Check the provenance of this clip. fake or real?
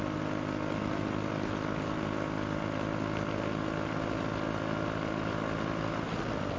real